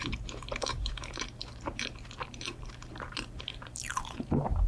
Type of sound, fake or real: fake